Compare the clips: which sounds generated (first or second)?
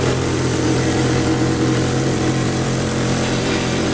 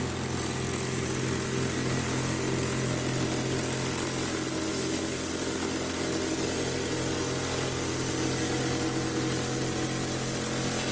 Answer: first